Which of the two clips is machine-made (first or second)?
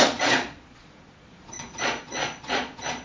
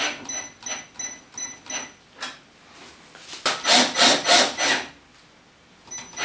first